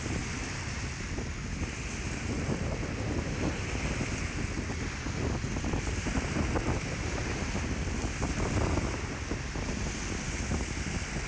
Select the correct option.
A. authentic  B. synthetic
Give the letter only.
A